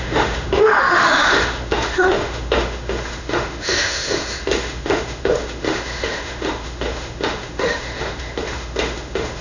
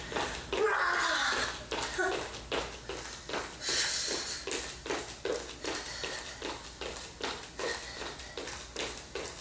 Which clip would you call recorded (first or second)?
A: second